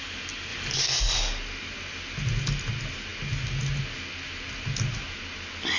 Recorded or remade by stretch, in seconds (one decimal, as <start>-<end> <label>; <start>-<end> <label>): 0.0-5.8 recorded